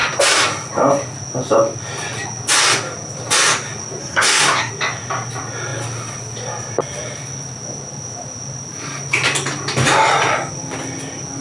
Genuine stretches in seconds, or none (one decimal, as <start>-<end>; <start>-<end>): 0.0-4.0; 4.7-11.4